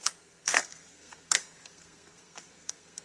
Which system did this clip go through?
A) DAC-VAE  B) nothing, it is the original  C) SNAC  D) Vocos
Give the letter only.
C